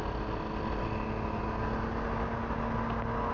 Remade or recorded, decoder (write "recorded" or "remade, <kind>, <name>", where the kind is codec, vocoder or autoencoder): recorded